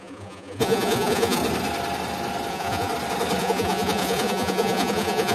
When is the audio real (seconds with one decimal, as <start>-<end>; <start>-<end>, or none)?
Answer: 1.4-2.5; 2.9-3.4